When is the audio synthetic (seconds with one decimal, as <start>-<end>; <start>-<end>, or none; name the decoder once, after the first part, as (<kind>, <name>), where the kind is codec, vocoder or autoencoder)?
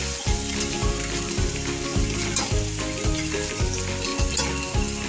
none